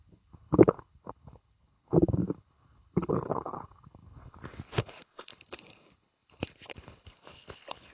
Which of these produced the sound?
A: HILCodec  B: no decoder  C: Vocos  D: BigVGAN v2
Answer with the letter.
A